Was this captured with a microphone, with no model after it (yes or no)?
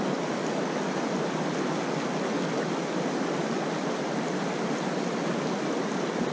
yes